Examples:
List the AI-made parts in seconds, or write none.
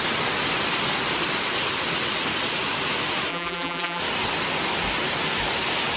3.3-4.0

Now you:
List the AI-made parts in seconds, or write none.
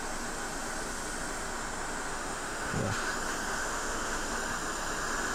2.1-2.8; 3.6-4.3